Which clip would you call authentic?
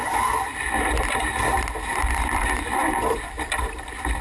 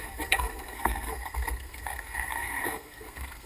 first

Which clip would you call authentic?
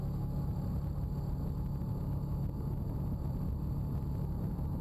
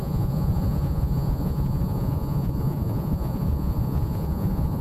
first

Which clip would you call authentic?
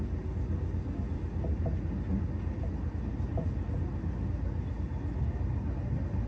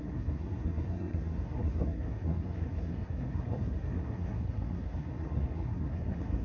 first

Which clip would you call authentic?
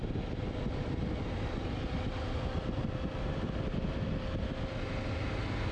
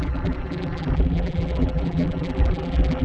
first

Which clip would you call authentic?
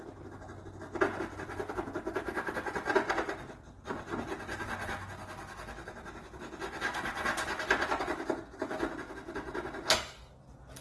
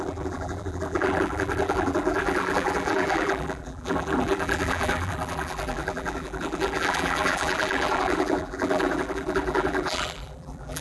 first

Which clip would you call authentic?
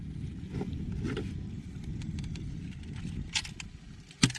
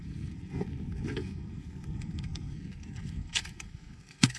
first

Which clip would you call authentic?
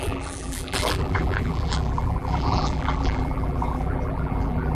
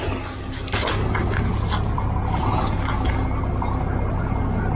second